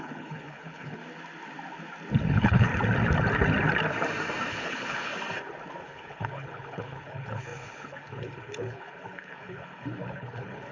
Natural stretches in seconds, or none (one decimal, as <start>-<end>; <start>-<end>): 1.0-2.3; 2.7-4.5; 5.1-5.8